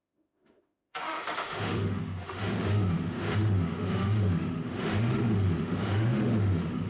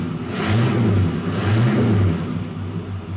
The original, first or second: second